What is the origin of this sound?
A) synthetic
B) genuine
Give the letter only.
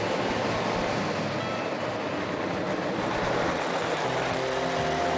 B